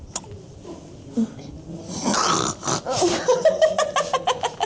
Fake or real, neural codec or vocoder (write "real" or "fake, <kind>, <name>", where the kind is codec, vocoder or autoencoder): real